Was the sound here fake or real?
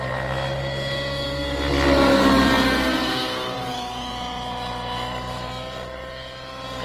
real